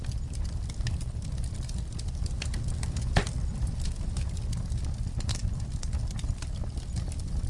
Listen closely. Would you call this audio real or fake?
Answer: real